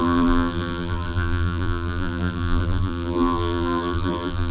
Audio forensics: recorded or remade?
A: remade